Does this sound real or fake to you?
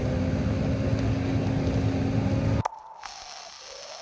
real